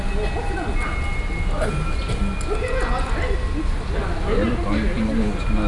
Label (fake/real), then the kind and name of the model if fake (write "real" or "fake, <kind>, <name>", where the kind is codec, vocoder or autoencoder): real